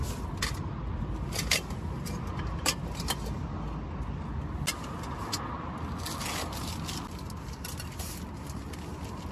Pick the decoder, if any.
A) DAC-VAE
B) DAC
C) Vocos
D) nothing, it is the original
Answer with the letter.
D